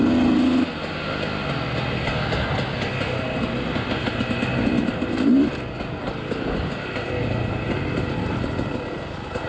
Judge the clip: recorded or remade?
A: recorded